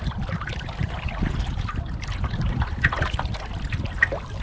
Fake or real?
real